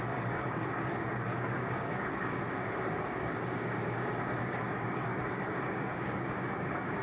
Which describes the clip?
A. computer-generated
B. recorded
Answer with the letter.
A